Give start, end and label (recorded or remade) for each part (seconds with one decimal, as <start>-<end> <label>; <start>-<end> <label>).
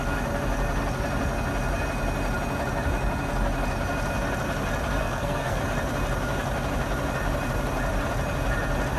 0.0-5.0 recorded; 5.0-5.6 remade; 5.6-9.0 recorded